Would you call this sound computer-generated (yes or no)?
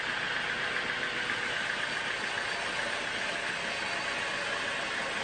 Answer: no